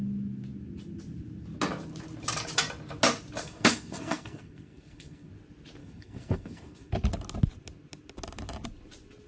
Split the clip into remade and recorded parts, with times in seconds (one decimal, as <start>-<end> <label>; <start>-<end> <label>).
0.0-3.4 recorded; 3.4-5.3 remade; 5.3-5.8 recorded; 5.8-6.9 remade; 6.9-9.3 recorded